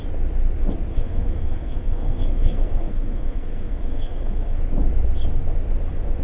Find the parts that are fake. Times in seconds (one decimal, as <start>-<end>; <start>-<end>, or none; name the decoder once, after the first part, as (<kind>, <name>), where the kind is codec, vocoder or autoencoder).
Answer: 0.9-4.6 (codec, SNAC)

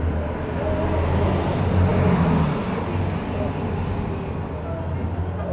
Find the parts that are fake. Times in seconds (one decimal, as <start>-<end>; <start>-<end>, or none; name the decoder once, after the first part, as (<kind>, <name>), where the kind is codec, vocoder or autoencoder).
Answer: none

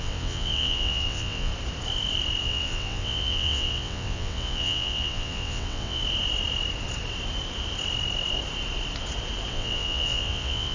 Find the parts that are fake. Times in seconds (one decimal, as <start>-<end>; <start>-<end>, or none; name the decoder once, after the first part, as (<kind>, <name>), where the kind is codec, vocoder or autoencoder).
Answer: 0.0-1.5 (vocoder, WaveNeXt); 2.4-6.0; 9.5-10.7